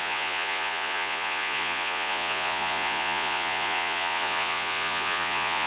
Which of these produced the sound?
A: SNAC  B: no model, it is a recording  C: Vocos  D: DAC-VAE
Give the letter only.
C